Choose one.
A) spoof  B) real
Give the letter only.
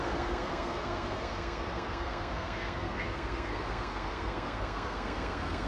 A